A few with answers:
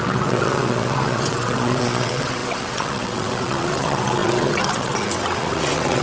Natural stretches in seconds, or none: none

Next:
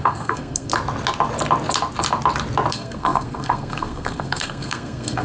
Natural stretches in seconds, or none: 0.7-2.7

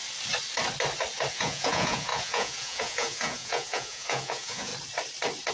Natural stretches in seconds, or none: 0.0-1.3; 4.7-5.5

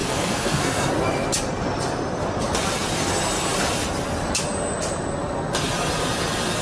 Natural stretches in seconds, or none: 0.9-6.6

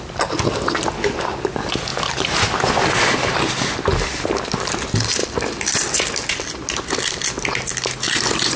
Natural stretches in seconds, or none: 0.0-8.6